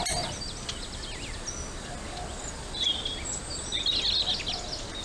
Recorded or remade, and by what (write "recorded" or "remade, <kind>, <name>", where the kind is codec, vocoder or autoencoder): recorded